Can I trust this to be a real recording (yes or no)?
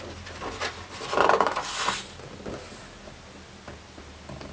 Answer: yes